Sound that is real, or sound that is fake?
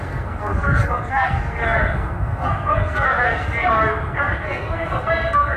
fake